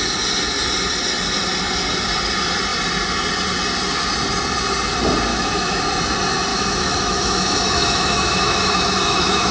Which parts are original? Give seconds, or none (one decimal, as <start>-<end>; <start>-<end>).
0.0-5.3; 5.8-6.5